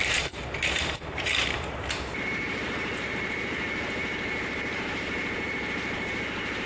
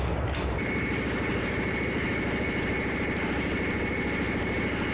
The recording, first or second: second